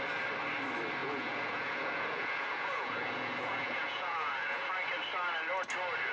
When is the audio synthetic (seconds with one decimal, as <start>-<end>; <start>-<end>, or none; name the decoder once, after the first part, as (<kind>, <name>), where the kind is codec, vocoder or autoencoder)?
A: 1.0-4.7 (vocoder, Vocos)